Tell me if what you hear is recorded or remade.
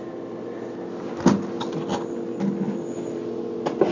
recorded